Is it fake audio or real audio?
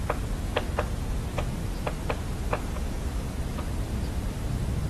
real